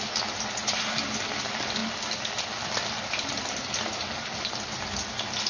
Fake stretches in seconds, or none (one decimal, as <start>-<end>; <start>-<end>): none